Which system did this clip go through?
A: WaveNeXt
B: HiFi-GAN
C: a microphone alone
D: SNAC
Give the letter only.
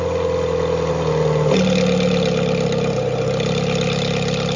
C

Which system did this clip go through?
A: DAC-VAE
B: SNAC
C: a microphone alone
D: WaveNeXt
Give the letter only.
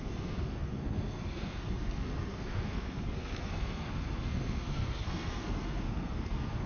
B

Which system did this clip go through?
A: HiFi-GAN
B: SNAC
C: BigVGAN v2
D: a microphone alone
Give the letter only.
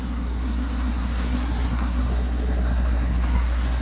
B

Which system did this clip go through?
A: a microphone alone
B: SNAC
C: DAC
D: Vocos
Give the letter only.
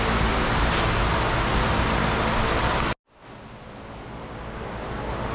A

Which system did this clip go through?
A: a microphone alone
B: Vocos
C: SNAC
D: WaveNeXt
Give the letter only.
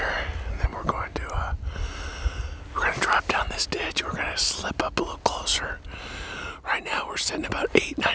A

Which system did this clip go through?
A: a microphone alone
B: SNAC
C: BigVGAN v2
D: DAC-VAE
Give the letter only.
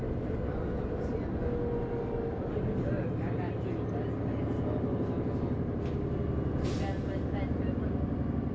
A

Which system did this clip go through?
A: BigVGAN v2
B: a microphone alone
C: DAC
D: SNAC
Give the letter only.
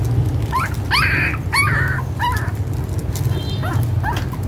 B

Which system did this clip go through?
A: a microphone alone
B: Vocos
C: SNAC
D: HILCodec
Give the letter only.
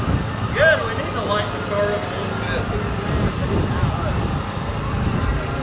A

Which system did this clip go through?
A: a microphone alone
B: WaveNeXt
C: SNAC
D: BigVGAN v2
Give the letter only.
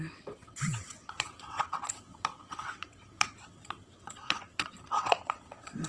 B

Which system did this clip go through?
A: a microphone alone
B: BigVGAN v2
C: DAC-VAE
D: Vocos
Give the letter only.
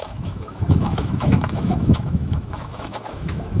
C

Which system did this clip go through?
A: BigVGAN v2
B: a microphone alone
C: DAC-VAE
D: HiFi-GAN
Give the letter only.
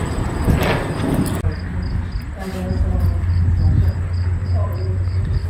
B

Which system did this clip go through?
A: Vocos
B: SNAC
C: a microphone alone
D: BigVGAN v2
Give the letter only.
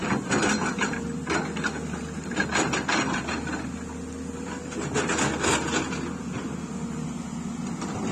C